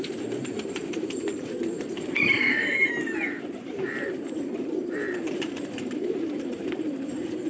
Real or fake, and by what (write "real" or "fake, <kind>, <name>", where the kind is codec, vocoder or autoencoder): fake, vocoder, BigVGAN v2